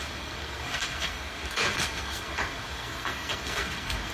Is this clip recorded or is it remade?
remade